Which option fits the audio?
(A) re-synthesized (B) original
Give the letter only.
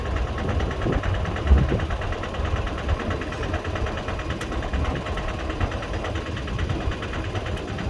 B